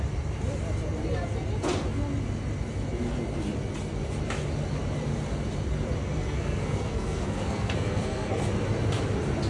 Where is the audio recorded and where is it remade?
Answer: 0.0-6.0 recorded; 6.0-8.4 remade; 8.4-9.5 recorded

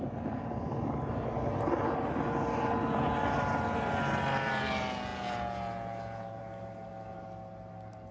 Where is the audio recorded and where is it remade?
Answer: 0.0-8.1 recorded

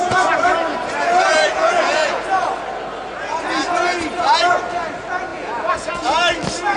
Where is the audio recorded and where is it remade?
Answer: 0.0-1.4 recorded; 1.4-2.2 remade; 2.2-5.3 recorded; 5.3-5.9 remade; 5.9-6.8 recorded

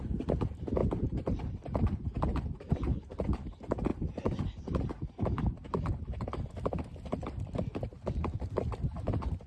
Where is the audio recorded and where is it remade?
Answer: 0.0-9.5 recorded

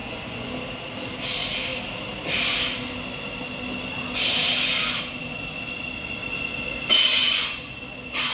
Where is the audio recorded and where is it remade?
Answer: 0.0-0.5 remade; 0.5-7.2 recorded; 7.2-7.7 remade; 7.7-8.3 recorded

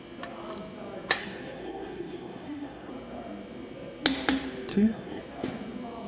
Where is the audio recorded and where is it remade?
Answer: 0.0-1.2 recorded; 1.2-2.9 remade; 2.9-4.7 recorded; 4.7-5.2 remade; 5.2-6.1 recorded